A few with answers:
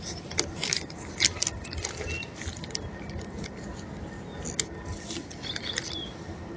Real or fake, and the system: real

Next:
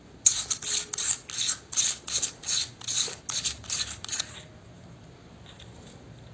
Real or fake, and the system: real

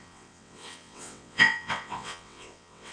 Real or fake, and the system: fake, vocoder, WaveNeXt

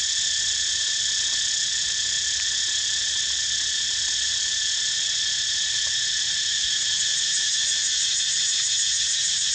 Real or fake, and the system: real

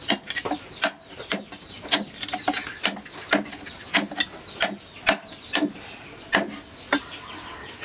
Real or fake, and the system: real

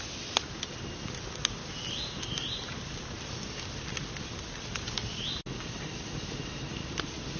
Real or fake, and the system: real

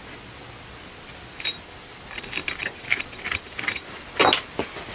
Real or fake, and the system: real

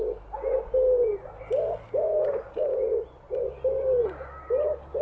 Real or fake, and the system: real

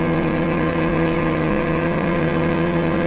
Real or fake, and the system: fake, vocoder, WaveNeXt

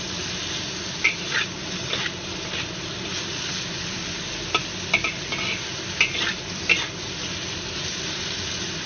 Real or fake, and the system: real